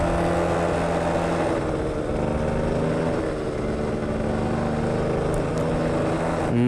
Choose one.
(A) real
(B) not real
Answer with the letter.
A